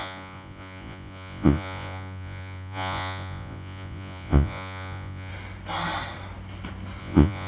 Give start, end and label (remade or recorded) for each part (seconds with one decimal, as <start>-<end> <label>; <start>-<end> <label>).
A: 0.0-5.3 remade; 5.3-7.0 recorded; 7.0-7.5 remade